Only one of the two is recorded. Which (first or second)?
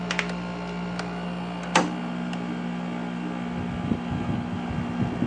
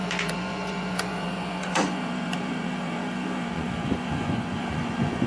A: first